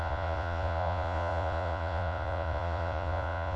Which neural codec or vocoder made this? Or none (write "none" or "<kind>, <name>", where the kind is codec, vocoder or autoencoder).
vocoder, Vocos